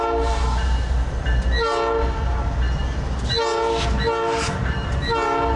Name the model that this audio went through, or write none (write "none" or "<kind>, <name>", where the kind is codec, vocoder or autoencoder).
none